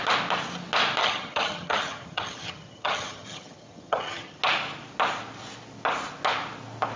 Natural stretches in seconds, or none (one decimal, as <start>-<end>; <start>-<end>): 0.0-1.0; 4.4-7.0